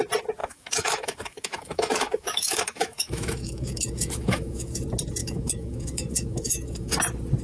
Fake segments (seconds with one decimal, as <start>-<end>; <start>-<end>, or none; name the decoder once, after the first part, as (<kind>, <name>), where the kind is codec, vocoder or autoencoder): 0.4-4.8 (autoencoder, DAC-VAE); 5.2-6.9